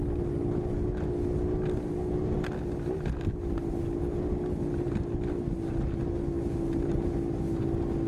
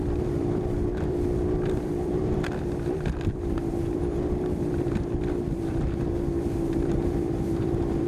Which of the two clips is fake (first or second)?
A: second